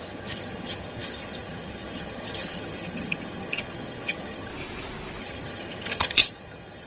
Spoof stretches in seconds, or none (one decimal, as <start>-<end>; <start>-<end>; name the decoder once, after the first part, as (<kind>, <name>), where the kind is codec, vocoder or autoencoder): 0.0-4.5 (vocoder, HiFi-GAN); 5.2-6.9